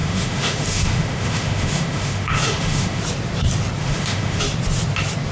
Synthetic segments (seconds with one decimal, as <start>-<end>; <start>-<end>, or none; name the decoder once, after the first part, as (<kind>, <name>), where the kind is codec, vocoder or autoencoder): 0.0-3.0 (autoencoder, DAC-VAE); 3.8-4.4